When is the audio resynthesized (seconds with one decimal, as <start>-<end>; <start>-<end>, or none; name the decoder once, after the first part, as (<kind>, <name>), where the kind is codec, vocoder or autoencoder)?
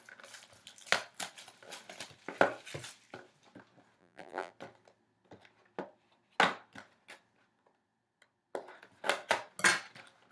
4.0-4.5 (vocoder, BigVGAN v2)